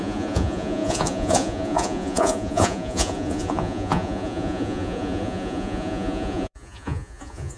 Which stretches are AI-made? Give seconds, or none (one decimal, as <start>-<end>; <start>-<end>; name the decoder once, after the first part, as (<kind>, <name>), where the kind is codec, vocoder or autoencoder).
0.0-7.6 (vocoder, Vocos)